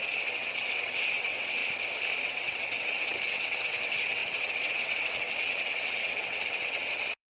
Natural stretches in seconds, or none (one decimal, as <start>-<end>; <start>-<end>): 1.6-2.2